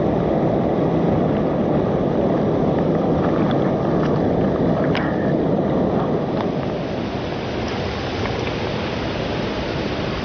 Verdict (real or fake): real